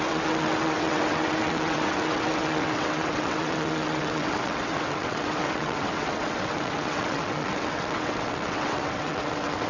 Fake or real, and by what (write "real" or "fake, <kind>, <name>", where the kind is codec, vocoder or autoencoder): fake, vocoder, WaveNeXt